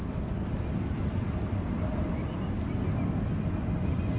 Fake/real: real